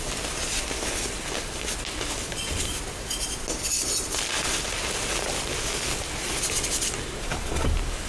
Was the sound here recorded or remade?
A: recorded